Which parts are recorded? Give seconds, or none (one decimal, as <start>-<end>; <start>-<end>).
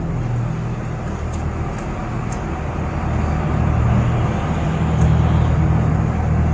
0.0-6.5